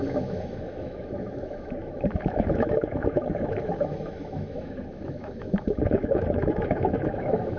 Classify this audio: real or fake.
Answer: fake